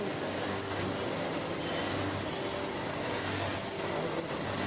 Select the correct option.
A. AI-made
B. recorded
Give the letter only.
B